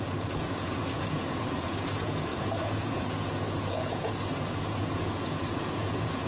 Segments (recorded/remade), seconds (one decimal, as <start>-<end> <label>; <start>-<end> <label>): 0.0-6.3 remade